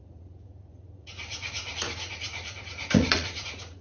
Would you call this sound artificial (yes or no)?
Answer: yes